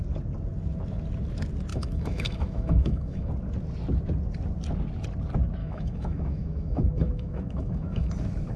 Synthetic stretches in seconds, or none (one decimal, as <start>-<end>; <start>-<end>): 1.7-3.3; 5.6-8.1